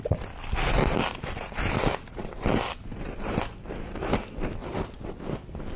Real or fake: real